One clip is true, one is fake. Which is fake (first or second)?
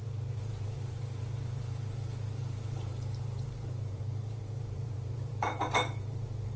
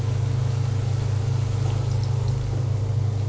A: first